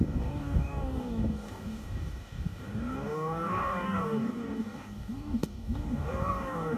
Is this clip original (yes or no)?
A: no